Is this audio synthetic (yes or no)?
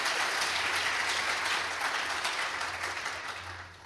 no